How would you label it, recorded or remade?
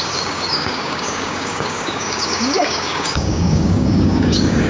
remade